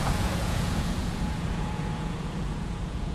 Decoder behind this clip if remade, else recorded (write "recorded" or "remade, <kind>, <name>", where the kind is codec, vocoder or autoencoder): remade, vocoder, Vocos